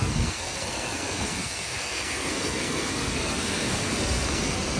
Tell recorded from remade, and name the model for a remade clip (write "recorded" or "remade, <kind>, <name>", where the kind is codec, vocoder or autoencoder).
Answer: remade, codec, SNAC